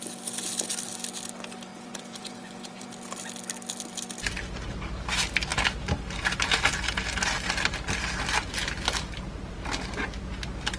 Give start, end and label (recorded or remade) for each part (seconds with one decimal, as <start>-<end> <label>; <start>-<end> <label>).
0.0-1.7 recorded; 1.7-2.9 remade; 2.9-10.8 recorded